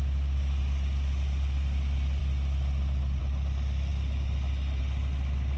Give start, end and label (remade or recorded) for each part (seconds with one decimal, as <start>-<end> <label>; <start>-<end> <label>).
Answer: 0.0-5.6 recorded